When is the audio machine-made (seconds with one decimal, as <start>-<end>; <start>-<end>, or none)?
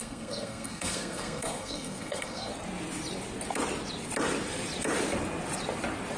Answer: 0.0-2.5